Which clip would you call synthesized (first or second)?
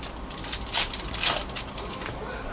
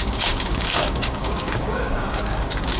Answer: second